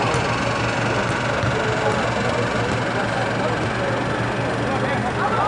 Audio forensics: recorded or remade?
recorded